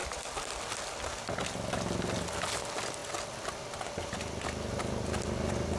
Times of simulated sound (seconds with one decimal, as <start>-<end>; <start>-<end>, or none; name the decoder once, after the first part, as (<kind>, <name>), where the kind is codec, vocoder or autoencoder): 0.0-0.6 (vocoder, BigVGAN v2)